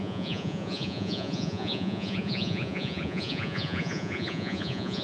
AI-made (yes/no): yes